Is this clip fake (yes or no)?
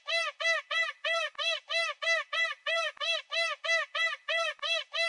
no